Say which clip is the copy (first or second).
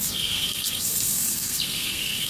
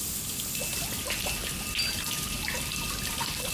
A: first